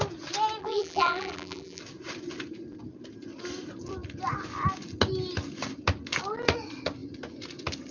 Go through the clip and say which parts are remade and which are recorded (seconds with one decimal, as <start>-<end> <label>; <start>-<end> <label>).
0.0-0.6 recorded; 0.6-1.8 remade; 1.8-7.9 recorded